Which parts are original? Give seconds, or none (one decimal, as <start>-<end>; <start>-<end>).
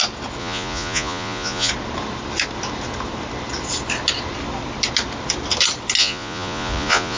0.0-0.4; 1.7-6.0